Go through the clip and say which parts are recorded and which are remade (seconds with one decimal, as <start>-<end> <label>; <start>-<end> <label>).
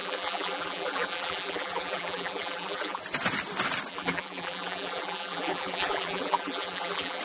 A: 0.0-3.0 remade; 3.0-3.9 recorded; 3.9-7.2 remade